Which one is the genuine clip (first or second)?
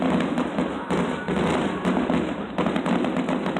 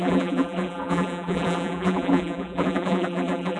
first